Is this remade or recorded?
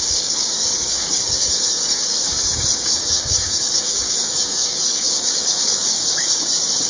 remade